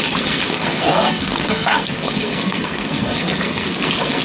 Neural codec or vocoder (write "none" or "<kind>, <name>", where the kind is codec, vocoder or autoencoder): codec, SNAC